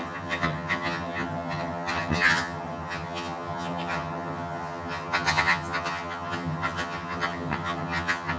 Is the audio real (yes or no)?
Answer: no